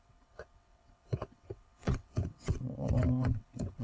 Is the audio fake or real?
fake